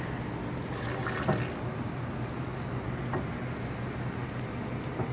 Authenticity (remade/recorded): recorded